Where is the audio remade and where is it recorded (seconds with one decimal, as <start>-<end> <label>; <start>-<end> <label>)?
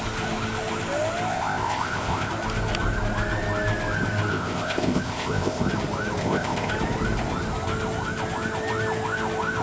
0.0-1.3 recorded; 1.3-2.3 remade; 2.3-4.3 recorded; 4.3-5.7 remade; 5.7-6.2 recorded; 6.2-6.7 remade; 6.7-9.6 recorded